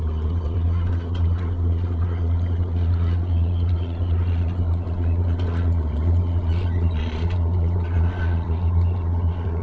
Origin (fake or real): fake